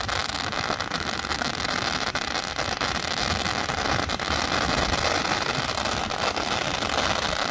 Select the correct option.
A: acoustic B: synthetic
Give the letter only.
A